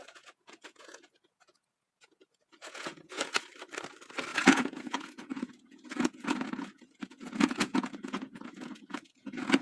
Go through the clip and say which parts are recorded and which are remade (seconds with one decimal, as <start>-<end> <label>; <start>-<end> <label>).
0.0-3.4 remade; 3.4-4.3 recorded; 4.3-9.6 remade

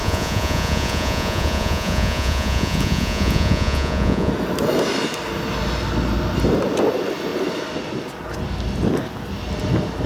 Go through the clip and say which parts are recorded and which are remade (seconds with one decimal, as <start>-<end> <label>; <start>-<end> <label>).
0.0-4.3 remade; 4.3-10.1 recorded

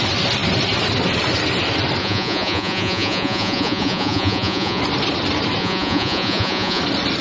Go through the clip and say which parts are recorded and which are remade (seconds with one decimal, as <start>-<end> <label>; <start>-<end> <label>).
0.0-2.0 recorded; 2.0-4.8 remade; 4.8-5.6 recorded; 5.6-6.8 remade; 6.8-7.2 recorded

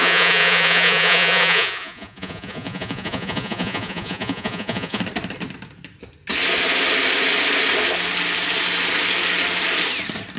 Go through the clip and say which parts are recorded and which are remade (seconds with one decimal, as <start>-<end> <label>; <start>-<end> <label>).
0.0-5.0 remade; 5.0-10.4 recorded

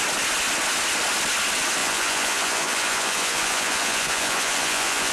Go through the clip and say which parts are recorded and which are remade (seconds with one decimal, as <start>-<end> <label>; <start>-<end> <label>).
0.0-1.8 recorded; 1.8-5.1 remade

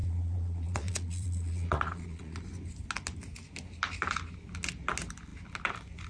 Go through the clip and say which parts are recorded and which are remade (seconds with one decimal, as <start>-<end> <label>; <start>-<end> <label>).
0.0-2.4 remade; 2.4-6.1 recorded

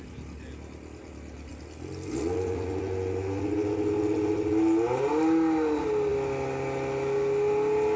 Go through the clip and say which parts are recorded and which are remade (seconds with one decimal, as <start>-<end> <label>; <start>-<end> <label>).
0.0-8.0 recorded